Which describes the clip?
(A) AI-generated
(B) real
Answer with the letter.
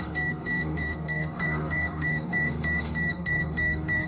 A